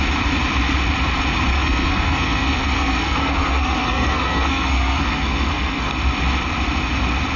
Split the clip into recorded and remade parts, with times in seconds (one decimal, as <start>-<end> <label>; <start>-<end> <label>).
0.0-1.5 recorded; 1.5-5.9 remade; 5.9-7.4 recorded

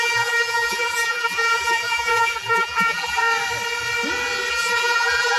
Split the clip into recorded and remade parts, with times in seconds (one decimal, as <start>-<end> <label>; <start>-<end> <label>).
0.0-3.2 remade; 3.2-4.5 recorded; 4.5-5.4 remade

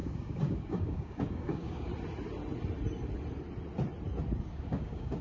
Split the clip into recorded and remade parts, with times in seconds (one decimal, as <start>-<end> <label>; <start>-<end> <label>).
0.0-1.9 remade; 1.9-4.4 recorded; 4.4-5.2 remade

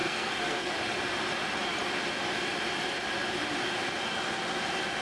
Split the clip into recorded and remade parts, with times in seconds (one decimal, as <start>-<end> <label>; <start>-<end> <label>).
0.0-0.7 remade; 0.7-5.0 recorded